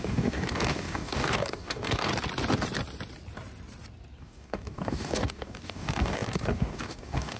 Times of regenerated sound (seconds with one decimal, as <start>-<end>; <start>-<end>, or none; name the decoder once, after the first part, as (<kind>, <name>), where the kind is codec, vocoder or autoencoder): 0.0-2.1 (codec, DAC); 4.2-7.4